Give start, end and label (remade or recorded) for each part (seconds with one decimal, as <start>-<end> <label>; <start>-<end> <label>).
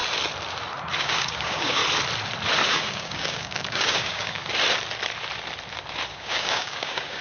0.0-1.0 recorded; 1.0-1.8 remade; 1.8-2.7 recorded; 2.7-4.4 remade; 4.4-6.1 recorded; 6.1-7.2 remade